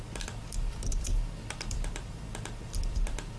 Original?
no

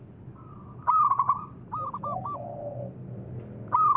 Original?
yes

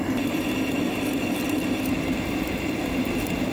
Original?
no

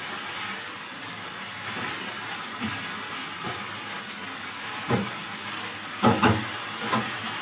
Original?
no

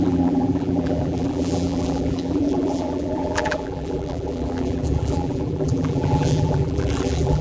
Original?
no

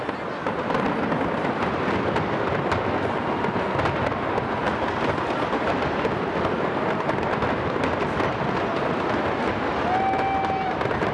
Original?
yes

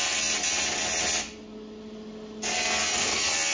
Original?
yes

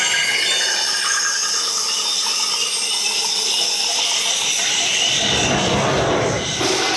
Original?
no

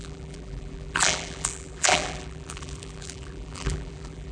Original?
no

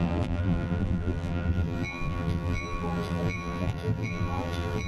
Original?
no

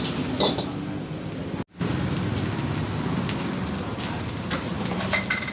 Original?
yes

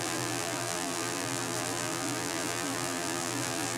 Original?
no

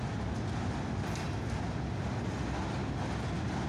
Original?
yes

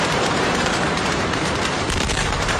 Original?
no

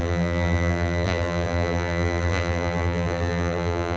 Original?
no